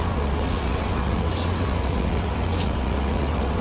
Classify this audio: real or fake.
fake